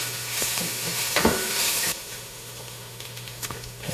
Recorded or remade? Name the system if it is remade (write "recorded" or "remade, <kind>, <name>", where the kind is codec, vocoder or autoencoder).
remade, autoencoder, DAC-VAE